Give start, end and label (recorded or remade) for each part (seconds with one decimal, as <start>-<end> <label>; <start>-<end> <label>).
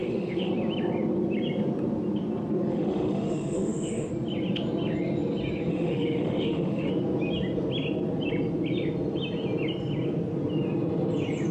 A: 0.0-0.5 remade; 0.5-2.7 recorded; 2.7-4.1 remade; 4.1-5.7 recorded; 5.7-6.9 remade; 6.9-11.5 recorded